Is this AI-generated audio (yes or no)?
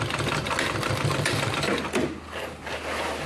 no